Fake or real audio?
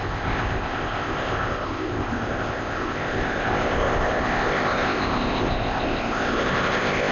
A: fake